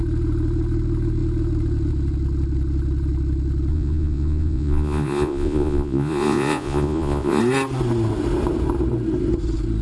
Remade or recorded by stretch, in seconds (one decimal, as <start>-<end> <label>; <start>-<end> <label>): 0.0-3.7 recorded; 3.7-7.4 remade; 7.4-9.8 recorded